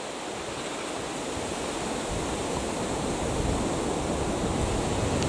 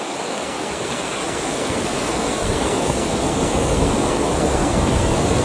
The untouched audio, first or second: first